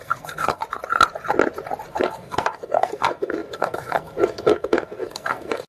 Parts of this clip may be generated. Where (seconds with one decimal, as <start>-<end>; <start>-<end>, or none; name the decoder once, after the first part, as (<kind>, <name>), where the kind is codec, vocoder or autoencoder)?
0.0-0.6 (codec, SNAC); 1.9-5.7